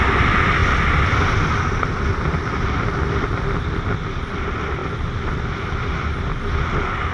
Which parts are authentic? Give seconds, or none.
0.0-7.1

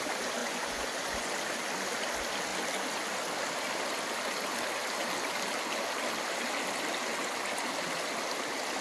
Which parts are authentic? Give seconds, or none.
0.0-0.4; 1.3-8.8

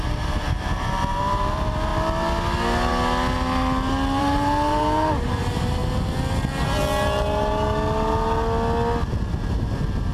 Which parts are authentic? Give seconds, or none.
1.9-4.2; 5.8-9.5

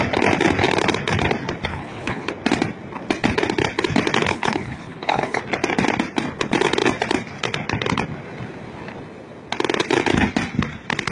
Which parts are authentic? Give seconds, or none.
0.0-1.7; 2.3-4.3; 5.4-11.1

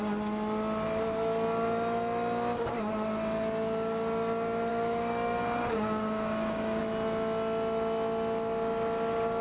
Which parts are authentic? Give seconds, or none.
0.0-4.7; 6.8-9.4

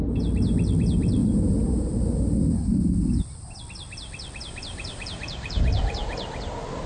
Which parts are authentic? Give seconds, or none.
0.0-1.2; 3.6-4.7; 5.8-6.9